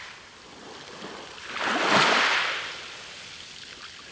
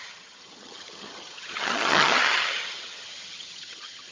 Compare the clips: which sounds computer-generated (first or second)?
second